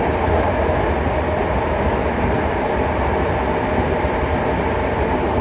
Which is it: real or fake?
real